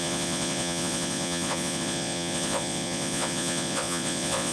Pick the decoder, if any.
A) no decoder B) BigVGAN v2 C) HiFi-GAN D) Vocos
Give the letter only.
D